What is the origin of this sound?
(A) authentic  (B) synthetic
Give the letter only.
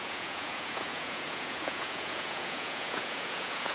B